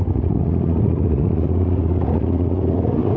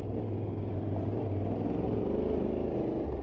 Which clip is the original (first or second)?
second